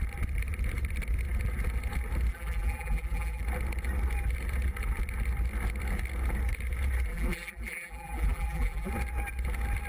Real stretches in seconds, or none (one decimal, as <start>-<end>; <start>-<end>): 0.0-2.3; 3.4-7.1; 8.9-9.9